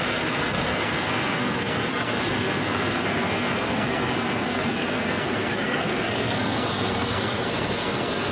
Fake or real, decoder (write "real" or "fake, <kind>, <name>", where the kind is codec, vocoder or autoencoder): fake, codec, SNAC